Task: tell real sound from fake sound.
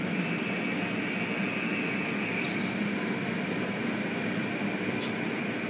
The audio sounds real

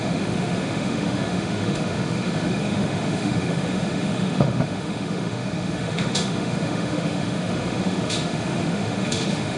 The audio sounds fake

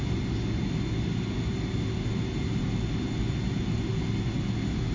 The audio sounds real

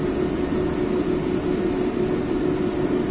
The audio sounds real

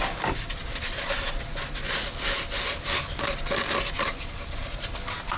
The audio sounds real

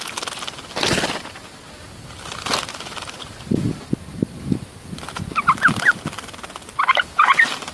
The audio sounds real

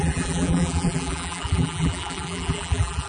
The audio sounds fake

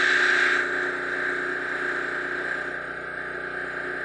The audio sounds real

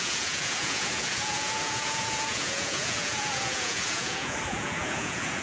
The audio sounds fake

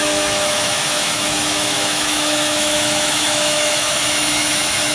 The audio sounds fake